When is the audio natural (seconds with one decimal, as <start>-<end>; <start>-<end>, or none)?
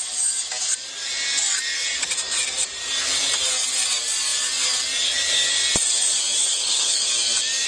0.0-6.4; 7.1-7.7